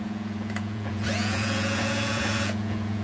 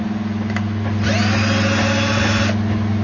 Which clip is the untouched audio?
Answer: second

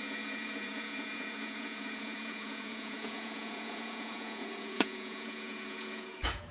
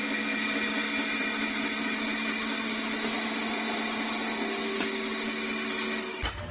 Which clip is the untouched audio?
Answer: second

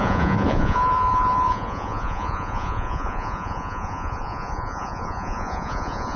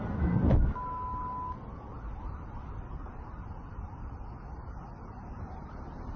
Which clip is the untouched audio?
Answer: second